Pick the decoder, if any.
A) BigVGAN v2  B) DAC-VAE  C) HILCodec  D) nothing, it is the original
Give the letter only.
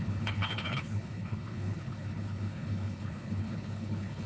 C